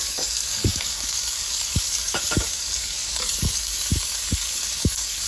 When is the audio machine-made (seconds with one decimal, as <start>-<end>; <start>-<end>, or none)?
0.0-5.3